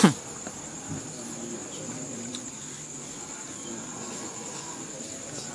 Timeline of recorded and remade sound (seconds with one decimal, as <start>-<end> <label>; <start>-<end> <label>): 0.0-3.9 recorded; 3.9-4.8 remade; 4.8-5.5 recorded